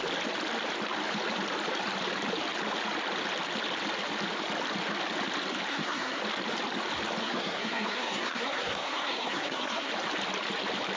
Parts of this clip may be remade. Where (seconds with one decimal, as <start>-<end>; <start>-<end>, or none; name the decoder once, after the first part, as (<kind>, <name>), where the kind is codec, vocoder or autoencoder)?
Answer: 5.7-6.2 (codec, SNAC); 7.2-9.9